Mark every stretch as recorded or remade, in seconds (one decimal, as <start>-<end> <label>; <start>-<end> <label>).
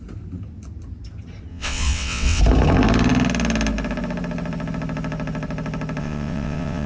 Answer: 0.0-1.5 recorded; 1.5-2.4 remade; 2.4-6.0 recorded; 6.0-6.9 remade